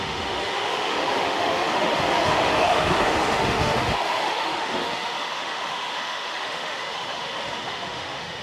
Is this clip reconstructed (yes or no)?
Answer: yes